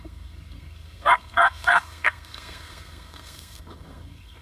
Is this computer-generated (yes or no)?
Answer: yes